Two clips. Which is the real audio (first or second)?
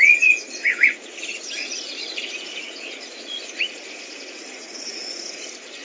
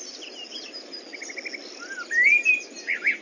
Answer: second